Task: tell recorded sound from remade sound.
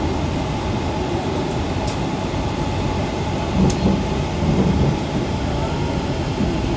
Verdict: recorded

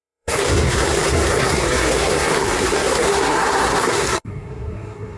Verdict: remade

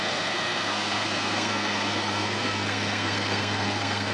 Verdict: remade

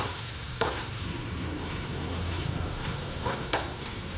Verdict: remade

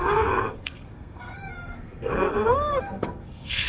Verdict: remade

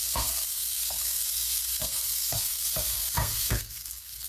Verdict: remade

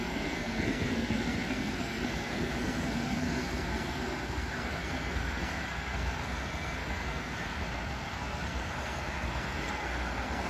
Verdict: remade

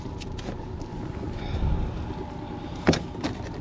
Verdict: recorded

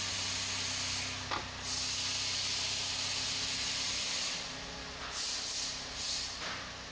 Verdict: recorded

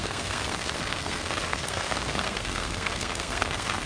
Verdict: remade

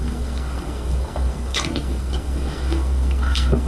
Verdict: remade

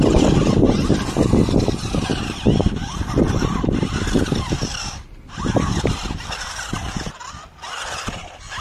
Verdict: recorded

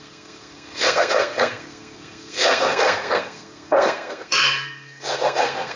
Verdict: remade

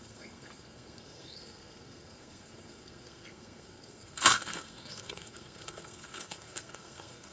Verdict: remade